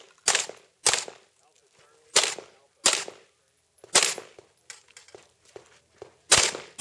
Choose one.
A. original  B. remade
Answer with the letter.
A